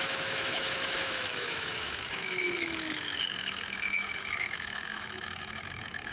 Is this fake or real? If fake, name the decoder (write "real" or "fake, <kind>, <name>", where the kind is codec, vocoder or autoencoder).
fake, autoencoder, DAC-VAE